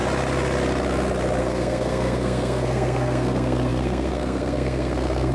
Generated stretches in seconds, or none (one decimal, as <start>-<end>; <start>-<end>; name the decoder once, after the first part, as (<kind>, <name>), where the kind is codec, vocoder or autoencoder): 1.4-5.3 (codec, SNAC)